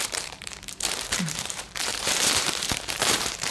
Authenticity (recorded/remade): remade